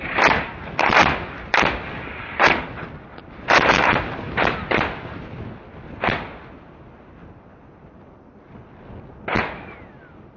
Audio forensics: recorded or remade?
recorded